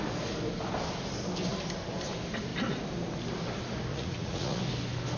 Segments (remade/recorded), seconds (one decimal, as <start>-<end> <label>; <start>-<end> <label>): 0.0-3.9 recorded; 3.9-4.6 remade; 4.6-5.2 recorded